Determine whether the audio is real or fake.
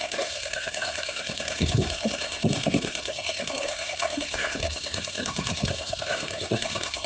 fake